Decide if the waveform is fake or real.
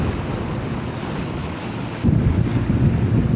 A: real